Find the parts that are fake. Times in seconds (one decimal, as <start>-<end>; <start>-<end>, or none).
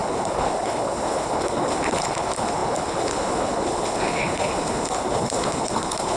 0.0-6.2